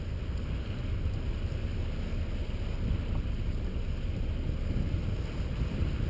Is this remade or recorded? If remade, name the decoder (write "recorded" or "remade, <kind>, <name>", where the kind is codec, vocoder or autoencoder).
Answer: recorded